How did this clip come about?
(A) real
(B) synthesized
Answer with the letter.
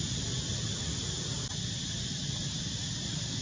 A